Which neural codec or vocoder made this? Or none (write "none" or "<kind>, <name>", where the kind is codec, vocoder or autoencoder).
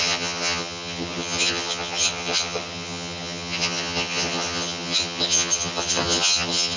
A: vocoder, HiFi-GAN